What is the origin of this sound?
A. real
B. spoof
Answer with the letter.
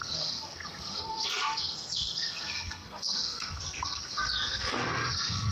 B